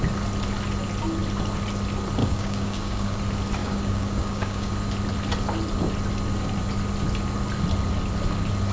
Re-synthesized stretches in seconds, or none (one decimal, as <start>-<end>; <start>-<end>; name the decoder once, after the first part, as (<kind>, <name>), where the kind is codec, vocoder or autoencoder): 2.2-3.2 (codec, DAC); 3.6-4.7